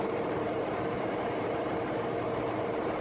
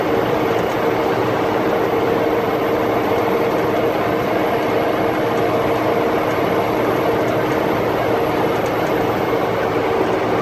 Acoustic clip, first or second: second